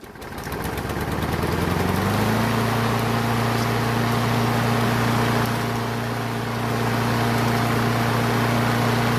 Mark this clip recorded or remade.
recorded